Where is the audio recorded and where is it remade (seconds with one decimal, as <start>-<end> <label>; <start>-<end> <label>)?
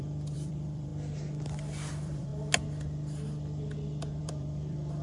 0.0-0.9 remade; 0.9-1.9 recorded; 1.9-2.3 remade; 2.3-4.2 recorded; 4.2-5.0 remade